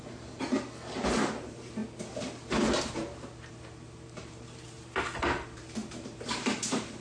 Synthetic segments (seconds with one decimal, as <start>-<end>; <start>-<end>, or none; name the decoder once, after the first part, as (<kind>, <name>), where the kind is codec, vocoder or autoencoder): 0.0-0.5 (vocoder, BigVGAN v2); 1.1-1.8; 3.5-7.0